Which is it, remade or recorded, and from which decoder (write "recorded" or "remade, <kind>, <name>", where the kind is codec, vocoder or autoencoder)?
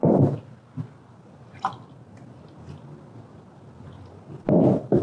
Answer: recorded